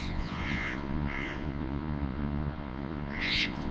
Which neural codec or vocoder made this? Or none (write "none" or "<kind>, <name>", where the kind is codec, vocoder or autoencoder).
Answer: vocoder, Vocos